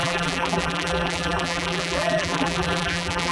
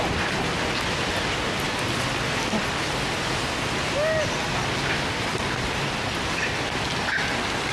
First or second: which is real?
second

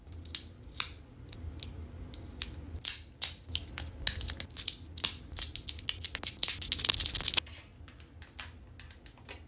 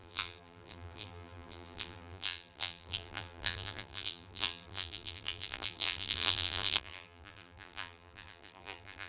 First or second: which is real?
first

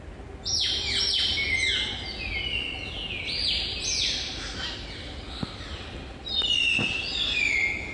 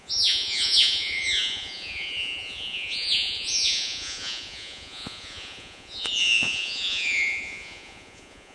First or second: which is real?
first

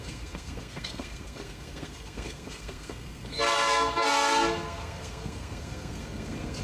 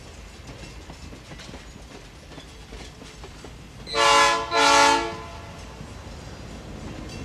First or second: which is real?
second